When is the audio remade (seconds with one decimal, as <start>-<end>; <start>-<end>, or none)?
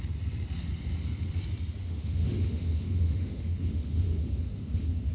1.8-5.1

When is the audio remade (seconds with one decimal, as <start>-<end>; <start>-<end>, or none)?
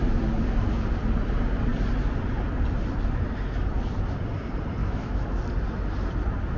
4.8-5.4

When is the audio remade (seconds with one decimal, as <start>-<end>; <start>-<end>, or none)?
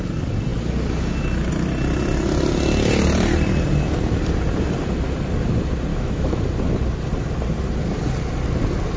5.9-6.4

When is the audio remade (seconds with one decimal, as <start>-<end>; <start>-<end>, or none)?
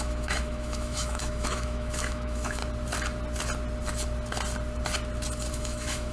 0.0-2.6; 5.5-6.1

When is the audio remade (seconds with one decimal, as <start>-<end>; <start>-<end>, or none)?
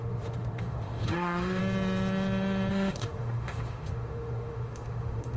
0.0-1.6; 2.7-5.4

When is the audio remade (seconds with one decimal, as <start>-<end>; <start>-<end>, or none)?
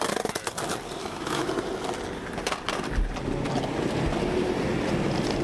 1.0-1.5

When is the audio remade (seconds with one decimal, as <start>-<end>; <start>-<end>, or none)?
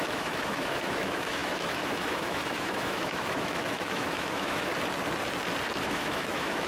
0.0-4.7; 5.8-6.7